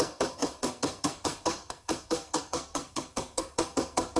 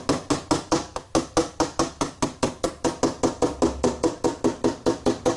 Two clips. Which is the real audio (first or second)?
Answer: second